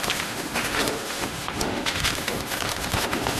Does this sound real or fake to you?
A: fake